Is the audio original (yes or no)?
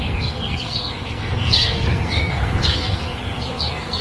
no